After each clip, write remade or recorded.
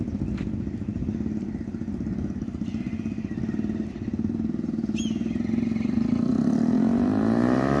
recorded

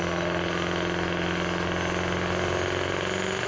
recorded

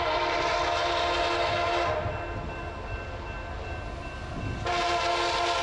recorded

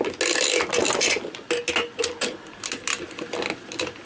recorded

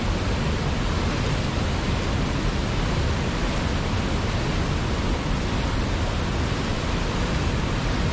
recorded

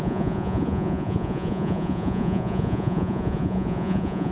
remade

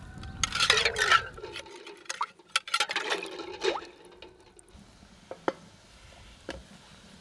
recorded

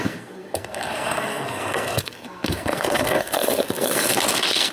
remade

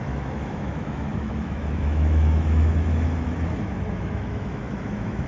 remade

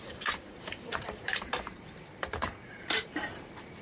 remade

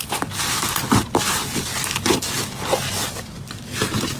recorded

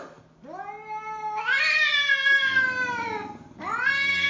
recorded